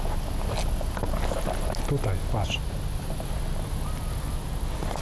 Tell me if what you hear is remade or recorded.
recorded